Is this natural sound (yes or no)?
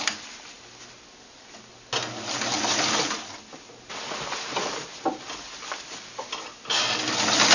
yes